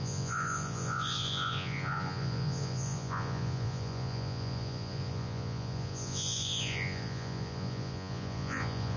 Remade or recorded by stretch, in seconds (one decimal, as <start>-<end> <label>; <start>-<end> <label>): 0.0-9.0 remade

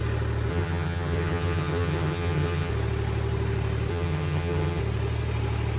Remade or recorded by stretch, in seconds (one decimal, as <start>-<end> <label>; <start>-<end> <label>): 0.0-0.5 recorded; 0.5-2.7 remade; 2.7-3.9 recorded; 3.9-4.8 remade; 4.8-5.8 recorded

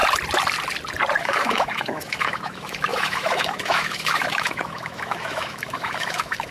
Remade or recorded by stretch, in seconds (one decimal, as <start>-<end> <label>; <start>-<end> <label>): 0.0-1.2 recorded; 1.2-6.5 remade